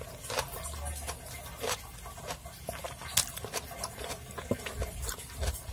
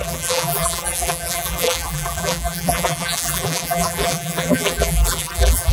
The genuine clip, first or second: first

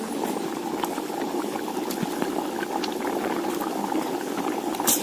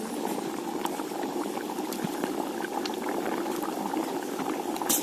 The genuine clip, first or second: first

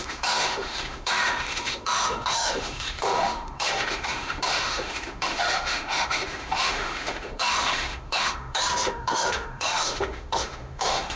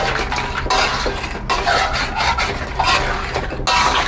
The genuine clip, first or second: second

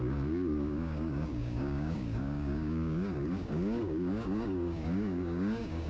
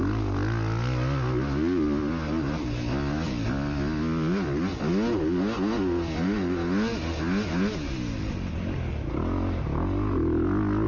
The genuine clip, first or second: second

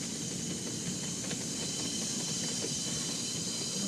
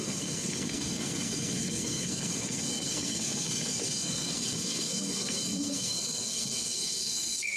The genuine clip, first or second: first